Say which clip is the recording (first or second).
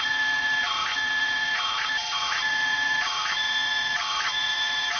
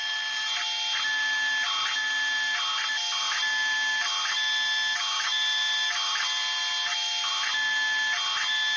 second